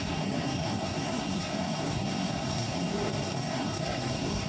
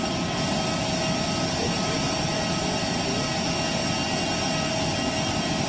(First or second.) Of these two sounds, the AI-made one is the first